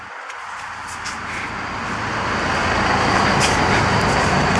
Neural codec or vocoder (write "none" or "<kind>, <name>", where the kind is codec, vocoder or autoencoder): none